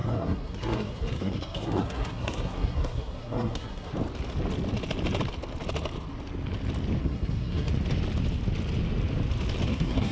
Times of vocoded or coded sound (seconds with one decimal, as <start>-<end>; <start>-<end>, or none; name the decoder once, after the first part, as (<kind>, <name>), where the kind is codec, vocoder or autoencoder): 0.0-3.9 (codec, SNAC); 7.0-7.7; 9.7-10.1